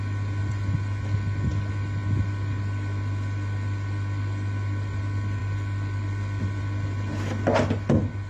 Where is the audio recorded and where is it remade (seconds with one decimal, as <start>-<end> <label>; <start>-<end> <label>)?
0.0-8.3 recorded